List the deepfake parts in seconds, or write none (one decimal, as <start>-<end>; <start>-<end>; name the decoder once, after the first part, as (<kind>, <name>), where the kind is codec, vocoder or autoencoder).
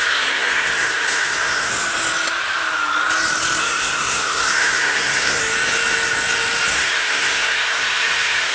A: 0.0-1.7 (codec, SNAC); 3.6-5.4; 6.7-8.5